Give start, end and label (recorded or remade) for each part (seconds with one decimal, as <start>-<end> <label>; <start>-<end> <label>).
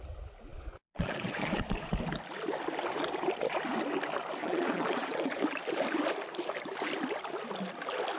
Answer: 0.0-0.5 recorded; 0.5-1.9 remade; 1.9-4.4 recorded; 4.4-5.4 remade; 5.4-8.2 recorded